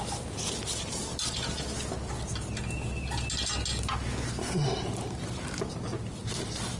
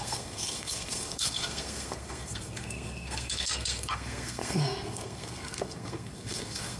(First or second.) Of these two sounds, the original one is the first